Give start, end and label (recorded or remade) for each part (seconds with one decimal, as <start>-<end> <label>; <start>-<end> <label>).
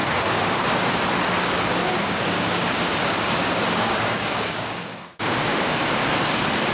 0.0-1.0 remade; 1.0-1.8 recorded; 1.8-5.8 remade; 5.8-6.7 recorded